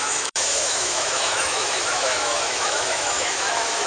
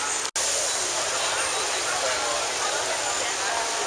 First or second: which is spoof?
first